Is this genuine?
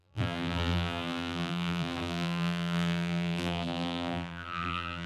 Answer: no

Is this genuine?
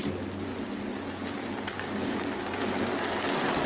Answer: yes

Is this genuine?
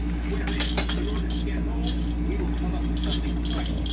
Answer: yes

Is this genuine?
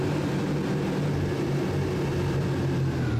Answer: yes